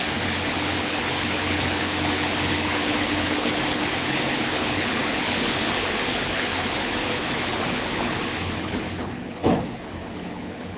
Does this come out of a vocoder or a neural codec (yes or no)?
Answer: yes